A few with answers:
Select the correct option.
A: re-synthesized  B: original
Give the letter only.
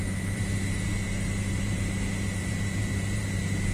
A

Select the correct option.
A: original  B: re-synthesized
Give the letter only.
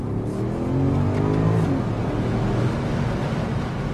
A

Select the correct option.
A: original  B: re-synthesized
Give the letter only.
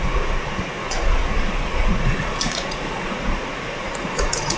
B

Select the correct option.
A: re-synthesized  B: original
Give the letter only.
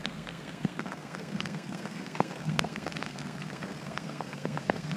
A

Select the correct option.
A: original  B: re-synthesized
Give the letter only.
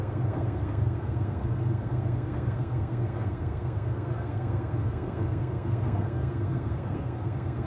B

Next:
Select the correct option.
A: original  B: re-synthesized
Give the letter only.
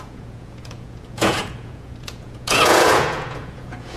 B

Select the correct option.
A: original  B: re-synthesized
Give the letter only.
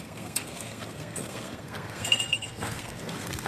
B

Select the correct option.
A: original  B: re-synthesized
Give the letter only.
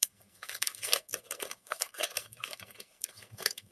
B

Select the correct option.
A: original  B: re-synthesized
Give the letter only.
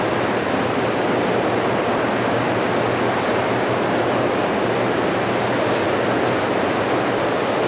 A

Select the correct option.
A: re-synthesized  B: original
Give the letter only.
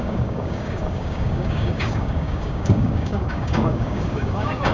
A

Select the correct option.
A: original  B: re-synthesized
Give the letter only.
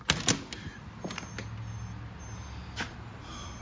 A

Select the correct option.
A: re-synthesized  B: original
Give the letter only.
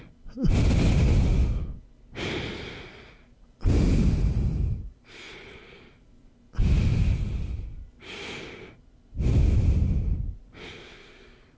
B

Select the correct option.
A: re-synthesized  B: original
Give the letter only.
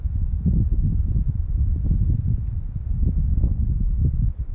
B